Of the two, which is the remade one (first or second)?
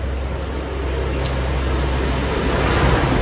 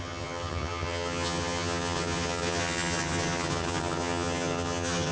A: second